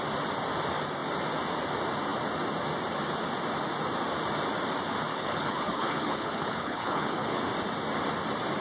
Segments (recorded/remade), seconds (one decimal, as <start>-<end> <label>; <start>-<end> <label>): 0.0-5.1 recorded; 5.1-7.4 remade; 7.4-8.6 recorded